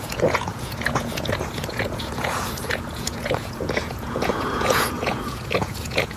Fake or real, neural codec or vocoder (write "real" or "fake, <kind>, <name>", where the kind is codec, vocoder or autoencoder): fake, vocoder, Vocos